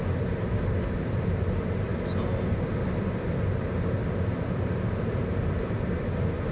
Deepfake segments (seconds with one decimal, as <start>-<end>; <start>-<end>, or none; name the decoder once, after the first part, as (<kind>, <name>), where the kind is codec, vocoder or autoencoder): none